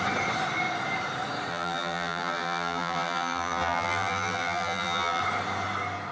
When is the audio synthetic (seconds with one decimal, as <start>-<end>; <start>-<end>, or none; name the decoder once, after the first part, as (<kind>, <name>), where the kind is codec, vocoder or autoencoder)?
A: 1.5-5.2 (vocoder, BigVGAN v2)